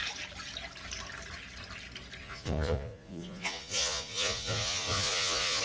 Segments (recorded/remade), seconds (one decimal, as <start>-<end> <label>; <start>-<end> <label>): 0.0-2.2 recorded; 2.2-5.6 remade